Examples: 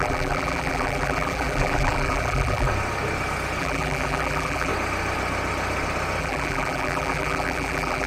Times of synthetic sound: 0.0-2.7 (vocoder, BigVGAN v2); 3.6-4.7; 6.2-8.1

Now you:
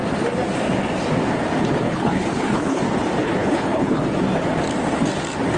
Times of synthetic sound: 1.8-2.8 (codec, HILCodec); 3.2-4.0

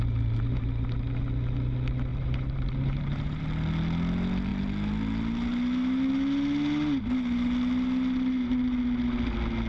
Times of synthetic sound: 2.1-3.4 (vocoder, BigVGAN v2)

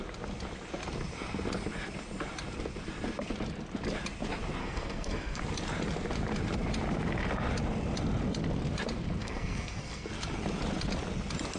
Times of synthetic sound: 4.6-5.4 (codec, SNAC); 9.2-10.1

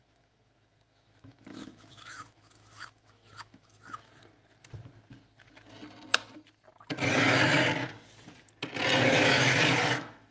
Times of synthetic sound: 0.0-4.1 (autoencoder, DAC-VAE); 9.0-10.3